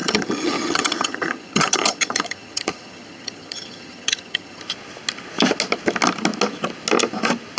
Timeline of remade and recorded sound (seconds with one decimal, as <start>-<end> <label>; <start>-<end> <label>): 0.0-4.6 remade; 4.6-7.6 recorded